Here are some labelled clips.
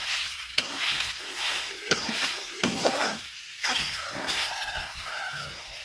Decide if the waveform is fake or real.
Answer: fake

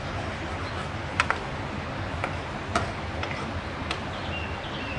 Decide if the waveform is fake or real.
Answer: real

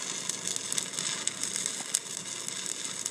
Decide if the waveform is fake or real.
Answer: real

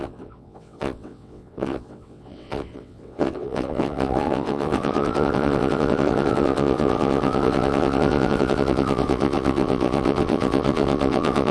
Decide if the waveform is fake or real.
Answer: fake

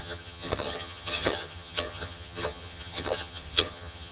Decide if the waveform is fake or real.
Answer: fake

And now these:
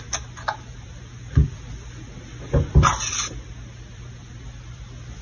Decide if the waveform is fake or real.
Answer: real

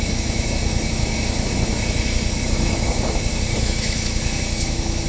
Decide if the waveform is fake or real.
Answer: fake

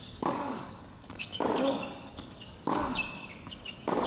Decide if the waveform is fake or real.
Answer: fake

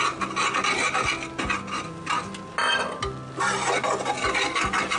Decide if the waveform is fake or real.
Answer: real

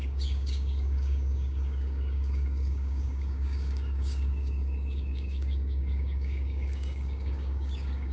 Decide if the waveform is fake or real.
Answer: fake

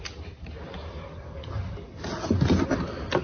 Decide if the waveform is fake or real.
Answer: real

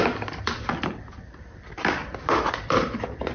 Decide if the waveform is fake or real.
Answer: fake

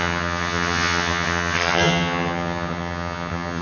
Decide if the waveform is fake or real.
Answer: fake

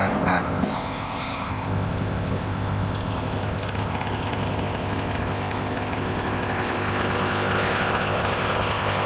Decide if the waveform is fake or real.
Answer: fake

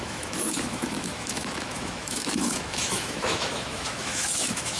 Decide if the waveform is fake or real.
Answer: fake